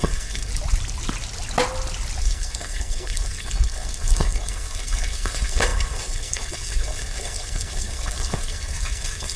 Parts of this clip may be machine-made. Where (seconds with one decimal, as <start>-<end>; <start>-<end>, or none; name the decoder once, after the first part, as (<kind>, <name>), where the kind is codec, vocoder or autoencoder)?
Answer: 0.0-0.5 (codec, SNAC); 2.2-9.4